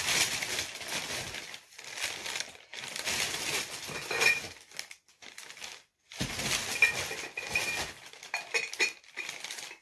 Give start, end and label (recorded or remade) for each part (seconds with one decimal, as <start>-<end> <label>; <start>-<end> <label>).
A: 0.0-9.8 recorded